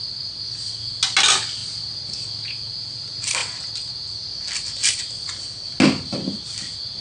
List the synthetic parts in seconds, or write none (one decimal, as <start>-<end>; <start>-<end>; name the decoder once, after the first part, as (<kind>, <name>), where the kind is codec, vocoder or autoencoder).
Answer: none